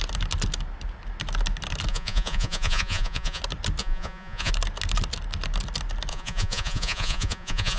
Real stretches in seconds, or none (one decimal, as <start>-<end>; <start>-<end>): 0.0-1.9; 3.4-3.8; 4.5-6.1